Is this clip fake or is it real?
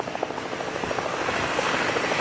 real